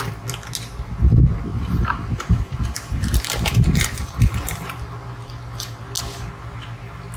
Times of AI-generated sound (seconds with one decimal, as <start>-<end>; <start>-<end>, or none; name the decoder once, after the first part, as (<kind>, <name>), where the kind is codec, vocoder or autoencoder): 1.5-5.8 (vocoder, BigVGAN v2)

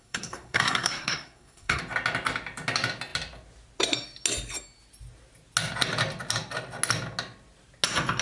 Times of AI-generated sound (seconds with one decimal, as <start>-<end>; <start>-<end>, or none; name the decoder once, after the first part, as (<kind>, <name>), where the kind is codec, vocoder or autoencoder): 0.0-1.8 (codec, SNAC)

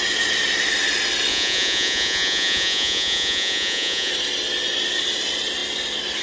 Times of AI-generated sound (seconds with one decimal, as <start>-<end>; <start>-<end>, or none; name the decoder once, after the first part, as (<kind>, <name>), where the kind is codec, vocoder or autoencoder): 1.3-4.1 (vocoder, Vocos)

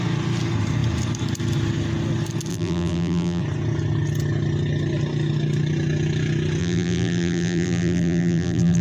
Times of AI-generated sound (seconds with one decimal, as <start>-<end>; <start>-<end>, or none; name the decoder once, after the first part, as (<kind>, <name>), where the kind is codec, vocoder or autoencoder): 2.5-3.4 (vocoder, BigVGAN v2); 6.6-8.8

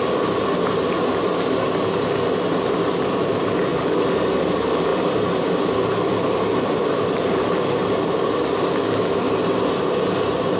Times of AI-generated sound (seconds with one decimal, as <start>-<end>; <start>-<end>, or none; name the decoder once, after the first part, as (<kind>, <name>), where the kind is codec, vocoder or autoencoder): none

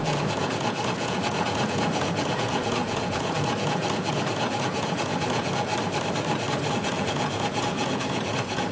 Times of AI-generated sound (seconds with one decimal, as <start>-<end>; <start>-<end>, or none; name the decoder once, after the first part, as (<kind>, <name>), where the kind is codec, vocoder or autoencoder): 0.0-5.7 (vocoder, Vocos); 6.7-8.7